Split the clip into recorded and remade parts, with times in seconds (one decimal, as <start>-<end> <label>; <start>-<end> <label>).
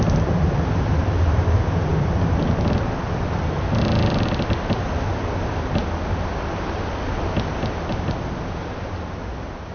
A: 0.0-9.7 recorded